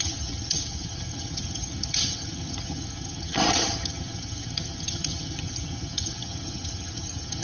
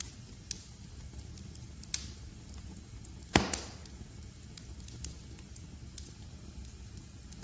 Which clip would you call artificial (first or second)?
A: first